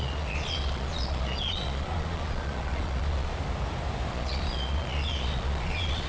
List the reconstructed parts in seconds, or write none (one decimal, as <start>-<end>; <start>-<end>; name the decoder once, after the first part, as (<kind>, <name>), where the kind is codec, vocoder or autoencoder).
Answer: 0.0-3.3 (vocoder, Vocos); 4.1-6.1